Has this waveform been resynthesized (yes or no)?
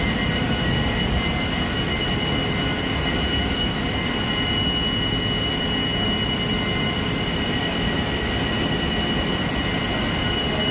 no